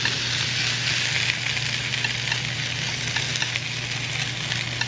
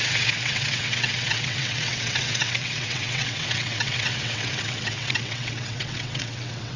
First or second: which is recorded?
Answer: first